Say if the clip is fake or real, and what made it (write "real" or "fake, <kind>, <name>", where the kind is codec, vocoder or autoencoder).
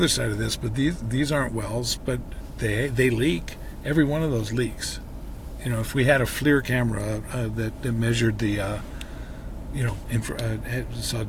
real